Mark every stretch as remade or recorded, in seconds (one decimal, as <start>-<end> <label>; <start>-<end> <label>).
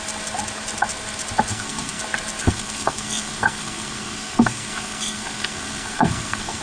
0.0-1.5 recorded; 1.5-2.0 remade; 2.0-2.4 recorded; 2.4-6.6 remade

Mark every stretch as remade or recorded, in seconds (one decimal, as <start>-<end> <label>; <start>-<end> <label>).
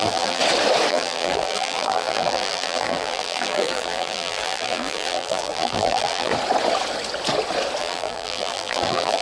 0.0-0.4 remade; 0.4-0.9 recorded; 0.9-6.3 remade; 6.3-7.8 recorded; 7.8-9.2 remade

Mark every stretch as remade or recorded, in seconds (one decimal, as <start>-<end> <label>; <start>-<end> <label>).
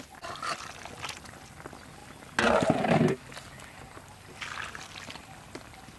0.0-6.0 recorded